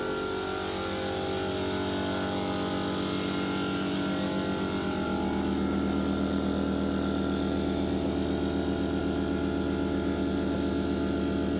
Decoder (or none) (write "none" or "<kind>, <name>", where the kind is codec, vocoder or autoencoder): none